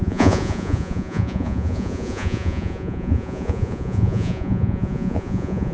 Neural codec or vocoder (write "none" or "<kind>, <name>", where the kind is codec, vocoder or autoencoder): vocoder, Vocos